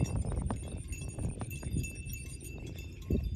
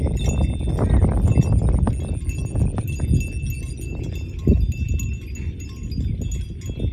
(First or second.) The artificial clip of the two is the first